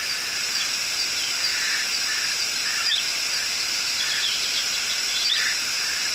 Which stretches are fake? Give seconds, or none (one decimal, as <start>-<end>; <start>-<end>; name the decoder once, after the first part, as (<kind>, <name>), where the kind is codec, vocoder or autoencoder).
none

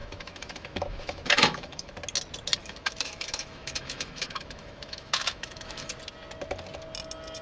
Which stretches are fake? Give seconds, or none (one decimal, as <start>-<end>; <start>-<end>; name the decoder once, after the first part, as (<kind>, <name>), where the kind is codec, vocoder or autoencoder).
0.0-1.9 (autoencoder, DAC-VAE); 2.6-5.9

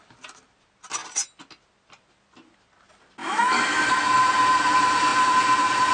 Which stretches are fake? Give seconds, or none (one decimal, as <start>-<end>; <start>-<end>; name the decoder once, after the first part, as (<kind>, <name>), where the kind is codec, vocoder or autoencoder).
3.2-4.0 (autoencoder, DAC-VAE)

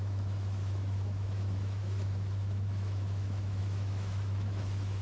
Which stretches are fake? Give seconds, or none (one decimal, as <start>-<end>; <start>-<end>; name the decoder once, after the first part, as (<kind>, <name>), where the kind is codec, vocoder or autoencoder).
0.0-5.0 (autoencoder, DAC-VAE)

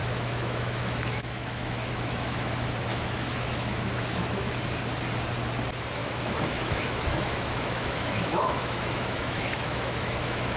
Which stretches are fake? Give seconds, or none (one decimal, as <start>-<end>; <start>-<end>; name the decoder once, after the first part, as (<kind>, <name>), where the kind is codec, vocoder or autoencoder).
0.0-2.5 (autoencoder, DAC-VAE); 2.9-4.6; 6.0-10.6

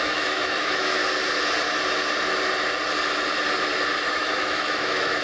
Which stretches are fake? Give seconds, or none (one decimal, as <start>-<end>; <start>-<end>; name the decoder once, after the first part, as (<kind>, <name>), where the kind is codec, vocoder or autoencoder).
0.0-1.0 (autoencoder, DAC-VAE); 4.1-5.2

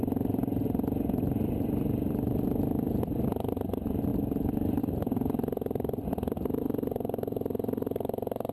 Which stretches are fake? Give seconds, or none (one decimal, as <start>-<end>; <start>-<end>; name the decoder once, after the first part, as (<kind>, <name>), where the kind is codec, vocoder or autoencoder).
none